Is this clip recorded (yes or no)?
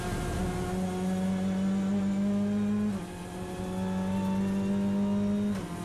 yes